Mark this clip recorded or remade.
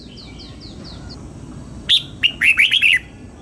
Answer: recorded